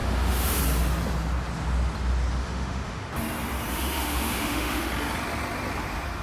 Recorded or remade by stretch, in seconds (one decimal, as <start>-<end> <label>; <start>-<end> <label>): 0.0-0.6 remade; 0.6-2.4 recorded; 2.4-3.1 remade; 3.1-3.7 recorded; 3.7-4.9 remade; 4.9-6.2 recorded